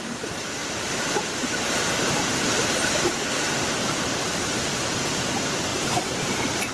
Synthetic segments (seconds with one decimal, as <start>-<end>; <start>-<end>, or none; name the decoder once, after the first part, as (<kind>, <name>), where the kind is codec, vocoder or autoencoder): 0.0-6.7 (vocoder, BigVGAN v2)